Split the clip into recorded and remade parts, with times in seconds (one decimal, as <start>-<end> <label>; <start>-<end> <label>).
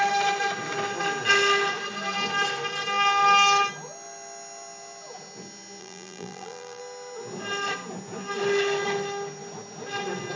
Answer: 0.0-5.8 recorded; 5.8-6.8 remade; 6.8-10.4 recorded